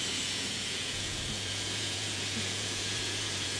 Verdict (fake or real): fake